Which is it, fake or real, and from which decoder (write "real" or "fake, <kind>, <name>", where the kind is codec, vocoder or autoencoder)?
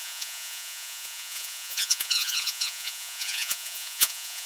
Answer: fake, vocoder, Vocos